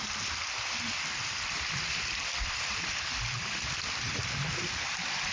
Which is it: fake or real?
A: real